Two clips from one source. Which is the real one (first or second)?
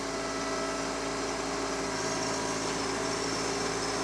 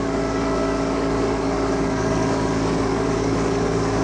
first